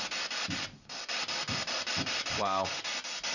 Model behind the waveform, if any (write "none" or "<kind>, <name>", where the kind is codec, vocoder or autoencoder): none